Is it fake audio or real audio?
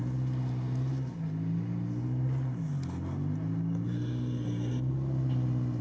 real